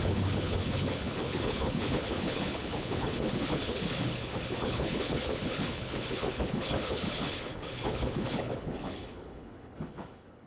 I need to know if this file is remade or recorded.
remade